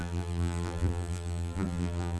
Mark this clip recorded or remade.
remade